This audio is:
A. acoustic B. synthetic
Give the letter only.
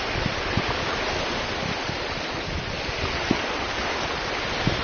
A